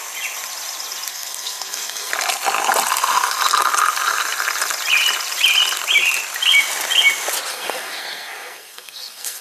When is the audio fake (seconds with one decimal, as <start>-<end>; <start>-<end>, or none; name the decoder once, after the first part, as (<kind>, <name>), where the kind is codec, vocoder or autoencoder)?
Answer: 1.1-2.1 (codec, SNAC); 7.5-9.4